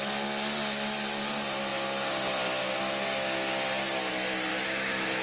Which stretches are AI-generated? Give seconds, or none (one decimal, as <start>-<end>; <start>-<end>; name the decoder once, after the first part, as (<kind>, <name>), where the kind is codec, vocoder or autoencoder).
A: 4.5-5.2 (autoencoder, DAC-VAE)